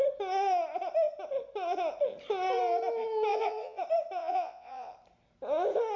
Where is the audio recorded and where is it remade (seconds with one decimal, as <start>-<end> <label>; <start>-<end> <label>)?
0.0-3.3 recorded; 3.3-3.8 remade; 3.8-4.2 recorded; 4.2-4.9 remade; 4.9-6.0 recorded